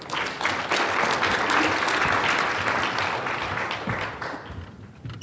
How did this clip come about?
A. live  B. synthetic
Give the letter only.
A